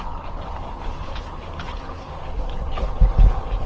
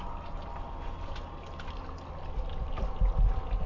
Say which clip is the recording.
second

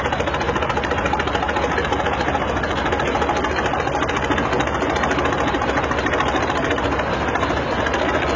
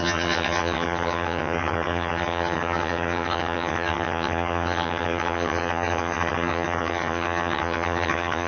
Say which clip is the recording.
first